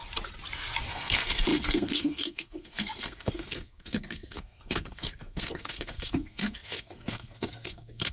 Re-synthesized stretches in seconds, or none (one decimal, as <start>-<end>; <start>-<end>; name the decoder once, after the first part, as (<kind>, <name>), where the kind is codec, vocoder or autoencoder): 0.9-8.1 (codec, SNAC)